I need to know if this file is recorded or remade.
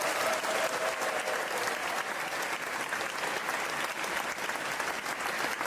recorded